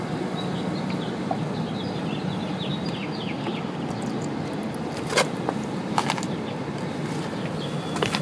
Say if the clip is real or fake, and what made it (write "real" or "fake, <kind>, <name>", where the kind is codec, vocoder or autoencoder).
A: real